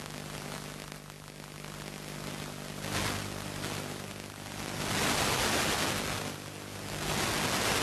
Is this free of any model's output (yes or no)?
yes